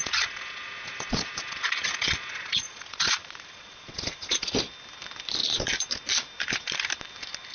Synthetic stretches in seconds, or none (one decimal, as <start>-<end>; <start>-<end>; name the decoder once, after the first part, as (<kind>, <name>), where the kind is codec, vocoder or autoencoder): 0.0-4.5 (vocoder, Vocos)